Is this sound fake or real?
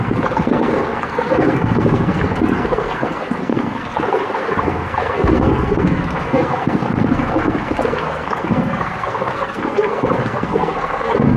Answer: fake